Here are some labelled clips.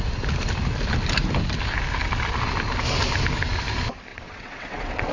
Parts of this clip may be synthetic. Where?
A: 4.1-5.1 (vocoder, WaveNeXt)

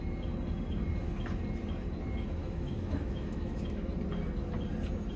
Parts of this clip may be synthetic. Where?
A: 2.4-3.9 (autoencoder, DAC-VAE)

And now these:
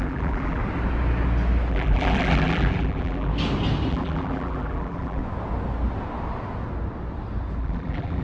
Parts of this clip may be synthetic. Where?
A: 0.0-0.6 (vocoder, BigVGAN v2); 1.7-3.3; 3.9-5.2; 7.6-8.2

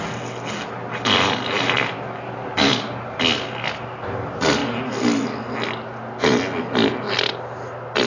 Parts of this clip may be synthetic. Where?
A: none

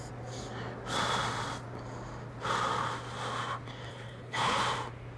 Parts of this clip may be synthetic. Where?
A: 3.9-4.6 (codec, HILCodec)